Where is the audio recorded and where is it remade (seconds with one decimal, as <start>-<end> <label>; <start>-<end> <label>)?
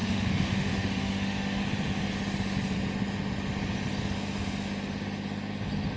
0.0-1.6 remade; 1.6-6.0 recorded